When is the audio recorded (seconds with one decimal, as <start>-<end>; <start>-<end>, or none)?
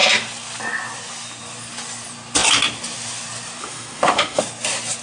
0.0-3.6; 4.4-5.0